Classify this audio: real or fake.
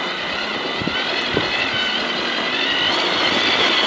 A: real